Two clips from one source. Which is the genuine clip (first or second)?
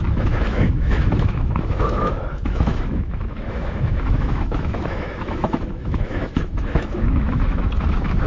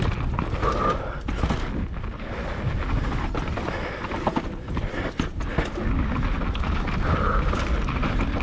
second